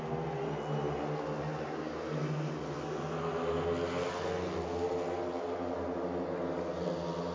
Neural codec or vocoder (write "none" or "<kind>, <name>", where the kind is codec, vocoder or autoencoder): none